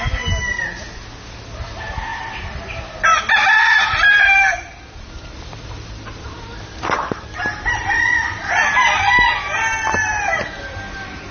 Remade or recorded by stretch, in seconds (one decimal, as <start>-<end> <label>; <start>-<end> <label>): 0.0-2.1 recorded; 2.1-2.7 remade; 2.7-3.6 recorded; 3.6-8.4 remade; 8.4-11.3 recorded